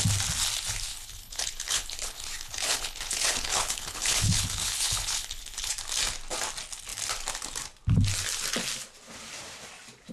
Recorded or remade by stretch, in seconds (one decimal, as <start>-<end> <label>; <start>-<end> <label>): 0.0-0.9 recorded; 0.9-5.7 remade; 5.7-10.1 recorded